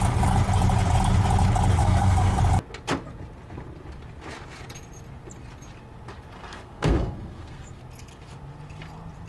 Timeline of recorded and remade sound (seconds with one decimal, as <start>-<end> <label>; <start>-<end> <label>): 0.0-1.8 recorded; 1.8-2.4 remade; 2.4-6.5 recorded; 6.5-7.8 remade; 7.8-9.3 recorded